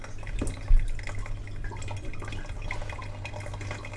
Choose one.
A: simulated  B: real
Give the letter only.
B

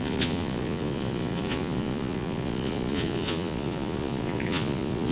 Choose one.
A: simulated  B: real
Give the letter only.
A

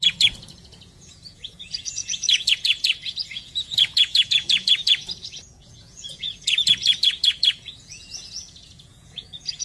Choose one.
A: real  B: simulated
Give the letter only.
B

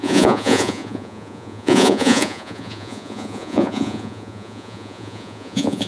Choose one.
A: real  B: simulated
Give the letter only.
B